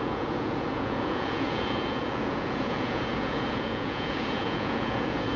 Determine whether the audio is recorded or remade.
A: remade